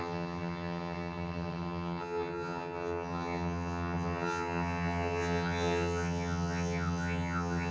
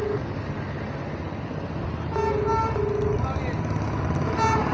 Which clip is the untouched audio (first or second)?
second